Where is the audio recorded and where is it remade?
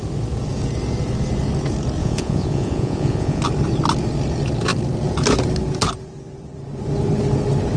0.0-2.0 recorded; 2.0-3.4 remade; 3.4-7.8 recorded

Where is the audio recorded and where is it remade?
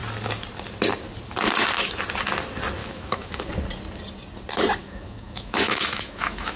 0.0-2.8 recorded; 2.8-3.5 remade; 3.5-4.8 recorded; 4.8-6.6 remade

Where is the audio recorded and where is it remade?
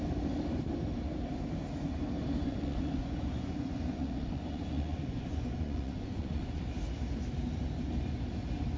0.0-2.4 recorded; 2.4-6.6 remade; 6.6-8.8 recorded